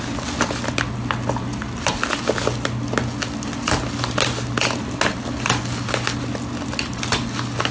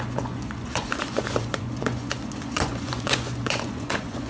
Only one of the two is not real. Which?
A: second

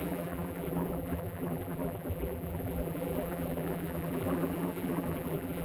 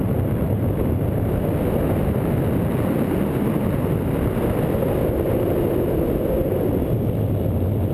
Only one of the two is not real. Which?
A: first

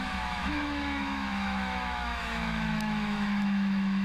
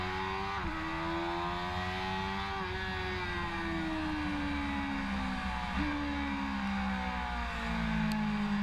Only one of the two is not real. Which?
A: first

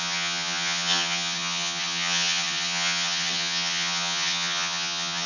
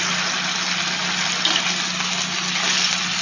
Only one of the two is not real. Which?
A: first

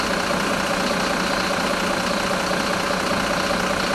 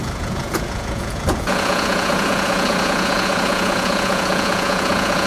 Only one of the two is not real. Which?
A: second